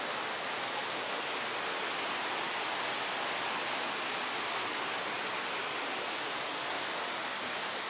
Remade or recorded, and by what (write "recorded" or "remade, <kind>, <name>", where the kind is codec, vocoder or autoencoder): recorded